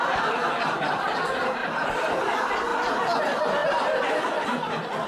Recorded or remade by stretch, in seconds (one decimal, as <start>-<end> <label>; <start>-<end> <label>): 0.0-1.6 recorded; 1.6-2.2 remade; 2.2-3.6 recorded; 3.6-4.6 remade; 4.6-5.1 recorded